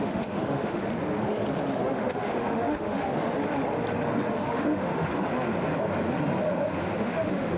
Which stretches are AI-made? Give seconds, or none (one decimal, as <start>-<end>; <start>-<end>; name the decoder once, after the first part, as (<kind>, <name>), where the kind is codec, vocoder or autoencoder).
0.0-0.8 (autoencoder, DAC-VAE); 1.9-3.1; 4.3-5.1; 7.0-7.6